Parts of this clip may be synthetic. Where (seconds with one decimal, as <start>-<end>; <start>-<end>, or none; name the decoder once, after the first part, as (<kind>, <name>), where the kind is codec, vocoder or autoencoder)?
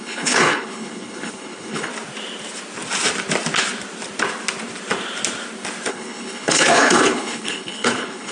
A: 0.0-1.9 (codec, HILCodec); 5.9-8.3